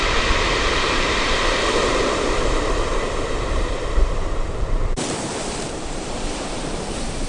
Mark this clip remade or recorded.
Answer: remade